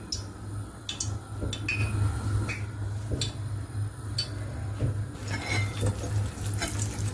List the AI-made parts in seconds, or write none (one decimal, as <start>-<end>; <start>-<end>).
none

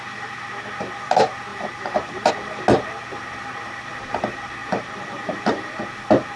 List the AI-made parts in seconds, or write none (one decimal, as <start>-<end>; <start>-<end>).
1.5-2.3; 4.6-5.7

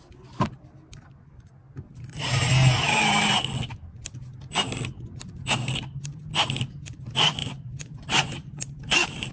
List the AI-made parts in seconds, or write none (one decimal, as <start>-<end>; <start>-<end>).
7.4-9.3

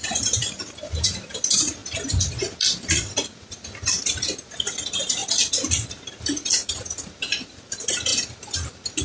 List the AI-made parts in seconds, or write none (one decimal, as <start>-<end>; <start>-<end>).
0.0-1.8; 4.6-5.2; 6.7-9.0

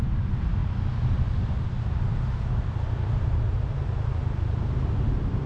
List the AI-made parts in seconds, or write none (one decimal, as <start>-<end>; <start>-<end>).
0.6-2.7